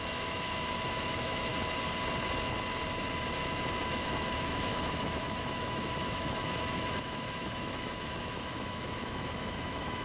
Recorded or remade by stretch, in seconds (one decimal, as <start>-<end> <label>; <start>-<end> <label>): 0.0-1.5 remade; 1.5-3.8 recorded; 3.8-10.0 remade

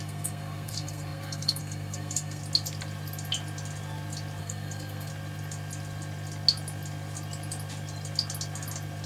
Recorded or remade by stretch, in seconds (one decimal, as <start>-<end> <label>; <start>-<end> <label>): 0.0-2.4 remade; 2.4-4.4 recorded; 4.4-5.1 remade; 5.1-9.1 recorded

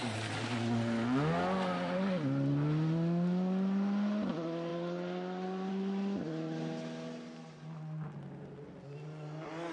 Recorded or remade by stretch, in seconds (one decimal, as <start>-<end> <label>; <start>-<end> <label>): 0.0-9.7 recorded

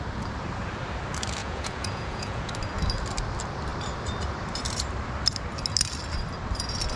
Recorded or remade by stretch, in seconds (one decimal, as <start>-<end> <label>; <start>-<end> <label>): 0.0-1.4 recorded; 1.4-2.5 remade; 2.5-7.0 recorded

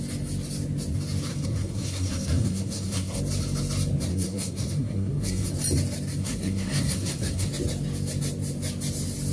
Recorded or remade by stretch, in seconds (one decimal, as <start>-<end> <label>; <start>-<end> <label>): 0.0-1.3 recorded; 1.3-3.2 remade; 3.2-4.1 recorded; 4.1-5.5 remade; 5.5-6.2 recorded; 6.2-7.5 remade; 7.5-9.3 recorded

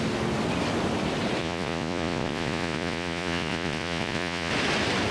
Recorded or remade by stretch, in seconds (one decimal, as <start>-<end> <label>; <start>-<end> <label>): 0.0-1.4 recorded; 1.4-4.5 remade; 4.5-5.1 recorded

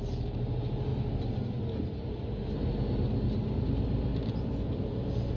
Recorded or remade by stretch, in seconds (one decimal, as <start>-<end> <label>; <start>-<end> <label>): 0.0-4.1 recorded; 4.1-4.9 remade; 4.9-5.4 recorded

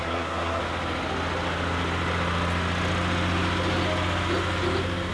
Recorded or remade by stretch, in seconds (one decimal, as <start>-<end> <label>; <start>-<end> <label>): 0.0-0.6 remade; 0.6-5.1 recorded